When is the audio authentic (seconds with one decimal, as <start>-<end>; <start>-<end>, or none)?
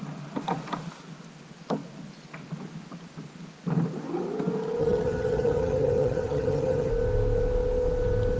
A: 0.0-4.8; 6.9-8.4